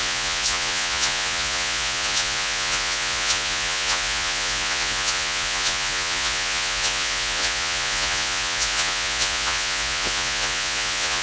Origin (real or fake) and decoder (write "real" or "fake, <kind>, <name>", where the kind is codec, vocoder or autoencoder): fake, vocoder, Vocos